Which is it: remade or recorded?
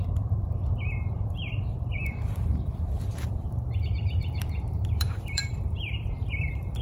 remade